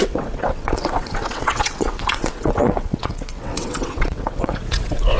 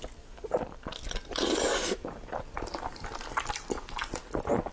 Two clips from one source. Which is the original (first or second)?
second